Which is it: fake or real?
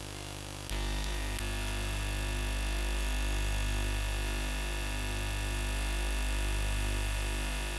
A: real